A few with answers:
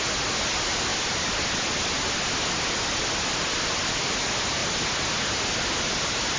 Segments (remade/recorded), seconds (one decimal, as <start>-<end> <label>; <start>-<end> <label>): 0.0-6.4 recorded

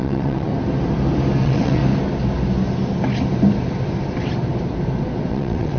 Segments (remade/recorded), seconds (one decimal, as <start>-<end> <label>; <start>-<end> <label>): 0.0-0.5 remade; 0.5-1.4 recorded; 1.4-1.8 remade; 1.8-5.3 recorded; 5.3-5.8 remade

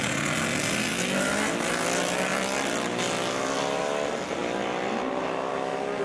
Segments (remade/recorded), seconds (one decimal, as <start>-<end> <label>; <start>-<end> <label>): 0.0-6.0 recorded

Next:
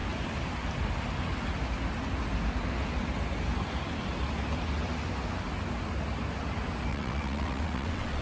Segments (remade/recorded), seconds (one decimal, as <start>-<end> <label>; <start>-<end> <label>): 0.0-6.9 recorded; 6.9-8.2 remade